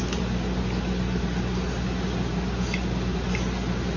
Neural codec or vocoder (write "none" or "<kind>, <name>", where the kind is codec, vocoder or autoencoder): none